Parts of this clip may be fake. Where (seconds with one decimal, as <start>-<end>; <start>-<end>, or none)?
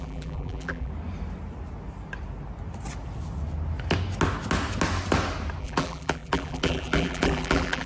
0.0-0.9; 5.6-7.9